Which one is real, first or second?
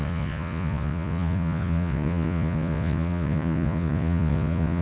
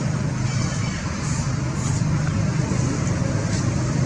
second